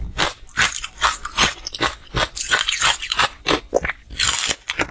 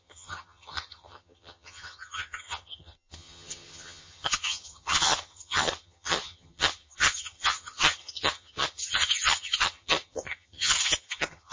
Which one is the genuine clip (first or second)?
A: first